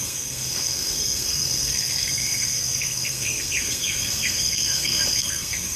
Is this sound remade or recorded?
remade